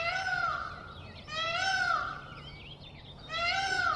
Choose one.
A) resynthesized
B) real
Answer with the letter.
B